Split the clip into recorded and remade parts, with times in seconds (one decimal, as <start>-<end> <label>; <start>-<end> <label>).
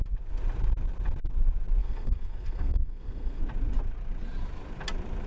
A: 0.0-1.8 recorded; 1.8-3.4 remade; 3.4-5.3 recorded